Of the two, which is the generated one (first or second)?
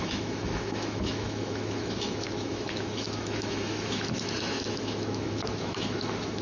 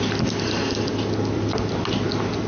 first